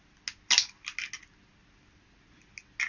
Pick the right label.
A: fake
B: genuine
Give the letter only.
B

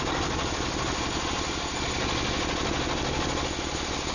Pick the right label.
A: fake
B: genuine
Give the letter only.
B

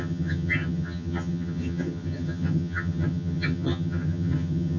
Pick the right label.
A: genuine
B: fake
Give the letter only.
B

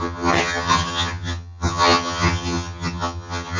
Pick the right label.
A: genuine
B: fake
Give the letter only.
B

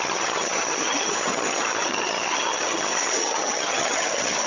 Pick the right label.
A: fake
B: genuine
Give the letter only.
A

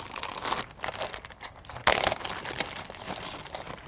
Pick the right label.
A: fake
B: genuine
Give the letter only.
B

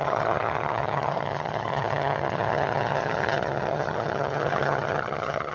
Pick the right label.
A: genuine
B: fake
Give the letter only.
B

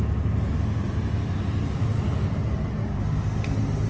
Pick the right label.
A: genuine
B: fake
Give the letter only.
A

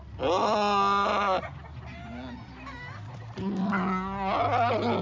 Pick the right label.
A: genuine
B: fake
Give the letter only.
A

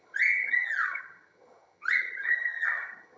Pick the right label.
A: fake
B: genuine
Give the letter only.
A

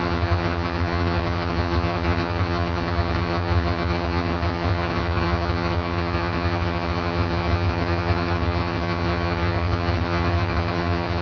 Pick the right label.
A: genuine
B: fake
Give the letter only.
B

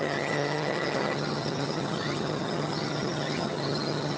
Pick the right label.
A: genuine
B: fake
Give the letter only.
B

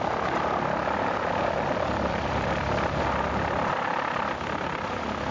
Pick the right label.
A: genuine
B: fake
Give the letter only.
A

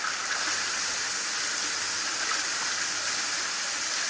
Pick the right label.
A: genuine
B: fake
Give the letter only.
A